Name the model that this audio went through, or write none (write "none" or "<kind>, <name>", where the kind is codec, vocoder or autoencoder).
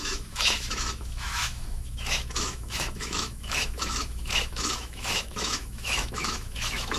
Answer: autoencoder, DAC-VAE